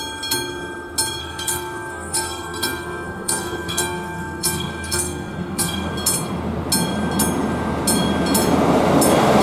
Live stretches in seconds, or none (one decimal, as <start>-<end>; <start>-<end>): 0.0-1.2; 5.9-9.4